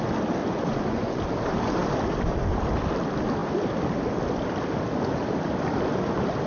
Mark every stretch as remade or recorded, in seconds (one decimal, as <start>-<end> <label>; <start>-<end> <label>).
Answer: 0.0-0.4 recorded; 0.4-1.2 remade; 1.2-6.5 recorded